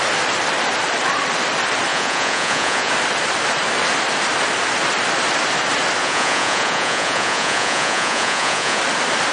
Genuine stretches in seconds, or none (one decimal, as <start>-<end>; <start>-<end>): 0.0-1.9; 2.9-6.0; 8.8-9.3